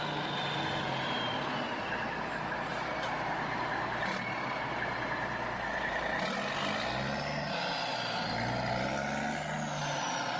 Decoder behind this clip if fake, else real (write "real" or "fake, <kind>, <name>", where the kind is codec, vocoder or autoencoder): real